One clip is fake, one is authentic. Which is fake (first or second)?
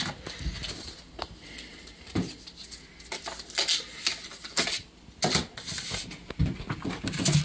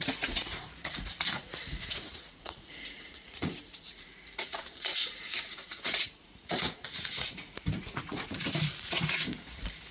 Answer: second